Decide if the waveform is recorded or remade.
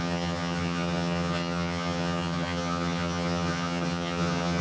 remade